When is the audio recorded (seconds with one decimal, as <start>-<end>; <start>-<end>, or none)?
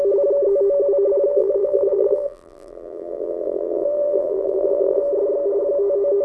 0.0-1.3; 5.0-6.2